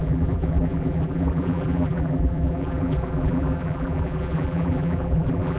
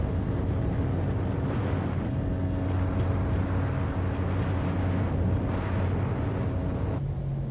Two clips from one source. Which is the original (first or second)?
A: second